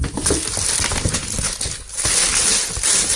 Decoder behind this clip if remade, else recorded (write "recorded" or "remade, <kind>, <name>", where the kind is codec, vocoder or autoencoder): recorded